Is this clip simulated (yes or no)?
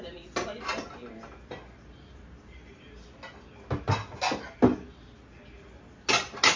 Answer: no